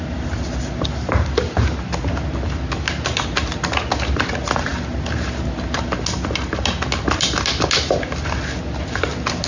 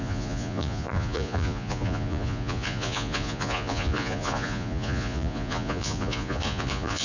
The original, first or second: first